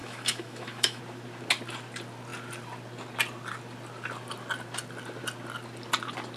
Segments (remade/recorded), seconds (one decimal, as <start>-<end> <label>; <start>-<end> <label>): 0.0-1.0 remade; 1.0-6.4 recorded